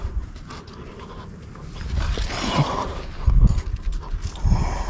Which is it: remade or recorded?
recorded